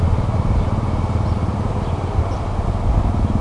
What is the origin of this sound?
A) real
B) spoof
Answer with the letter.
A